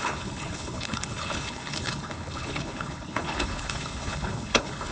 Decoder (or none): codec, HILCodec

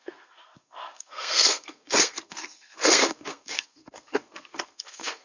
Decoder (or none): codec, SNAC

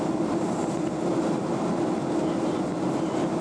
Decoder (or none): none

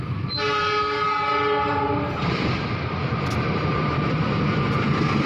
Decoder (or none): vocoder, BigVGAN v2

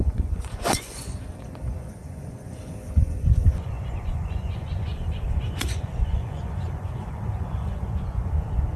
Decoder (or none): vocoder, Vocos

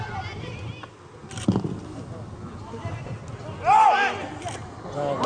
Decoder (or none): none